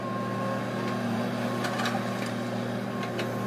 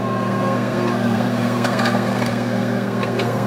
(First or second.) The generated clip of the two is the second